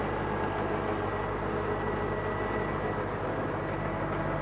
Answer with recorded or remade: recorded